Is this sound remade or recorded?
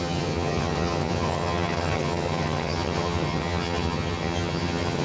remade